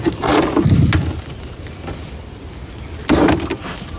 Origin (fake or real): real